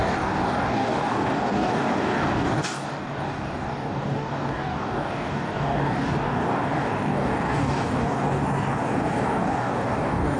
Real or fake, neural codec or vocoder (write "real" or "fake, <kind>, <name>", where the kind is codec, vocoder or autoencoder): fake, codec, DAC